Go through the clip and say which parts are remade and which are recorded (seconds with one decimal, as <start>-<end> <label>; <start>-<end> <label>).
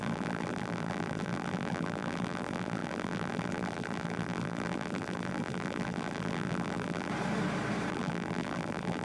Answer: 0.0-7.1 remade; 7.1-7.9 recorded; 7.9-9.0 remade